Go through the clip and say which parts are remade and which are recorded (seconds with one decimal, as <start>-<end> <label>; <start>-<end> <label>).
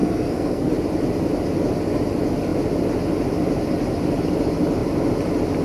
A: 0.0-0.7 remade; 0.7-5.6 recorded